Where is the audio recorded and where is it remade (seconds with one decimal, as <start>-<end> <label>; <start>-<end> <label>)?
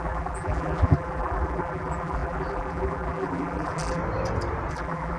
0.0-4.0 remade; 4.0-4.7 recorded; 4.7-5.2 remade